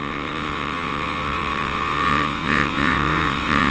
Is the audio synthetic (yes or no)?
yes